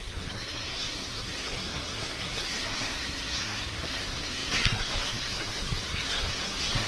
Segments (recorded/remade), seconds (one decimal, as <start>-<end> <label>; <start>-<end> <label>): 0.0-6.9 remade